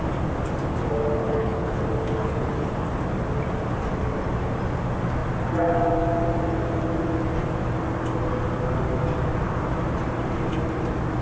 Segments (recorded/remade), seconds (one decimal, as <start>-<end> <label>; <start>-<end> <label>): 0.0-1.2 recorded; 1.2-1.8 remade; 1.8-2.2 recorded; 2.2-2.8 remade; 2.8-11.2 recorded